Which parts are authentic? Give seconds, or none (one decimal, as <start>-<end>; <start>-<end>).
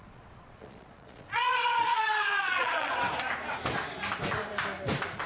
2.9-5.3